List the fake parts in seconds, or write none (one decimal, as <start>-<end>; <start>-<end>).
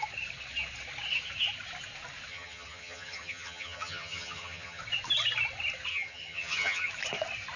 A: 2.3-4.8; 5.9-6.9